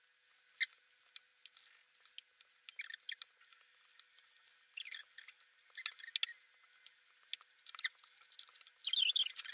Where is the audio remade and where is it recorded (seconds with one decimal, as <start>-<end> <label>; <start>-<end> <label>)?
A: 0.0-9.5 recorded